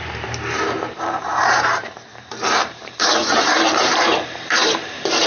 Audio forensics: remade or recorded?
remade